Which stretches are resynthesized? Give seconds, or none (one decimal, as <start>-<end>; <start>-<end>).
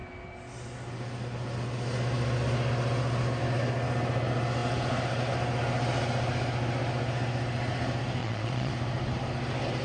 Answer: 8.2-8.7